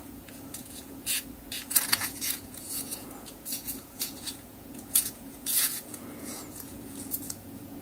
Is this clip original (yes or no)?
no